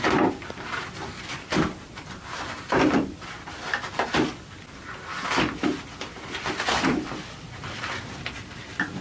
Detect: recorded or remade remade